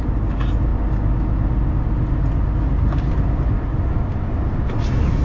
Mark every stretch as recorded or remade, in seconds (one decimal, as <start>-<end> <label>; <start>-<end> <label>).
0.0-5.2 recorded